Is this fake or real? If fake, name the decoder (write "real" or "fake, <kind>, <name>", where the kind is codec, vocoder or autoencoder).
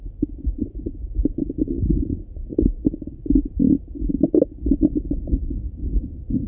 real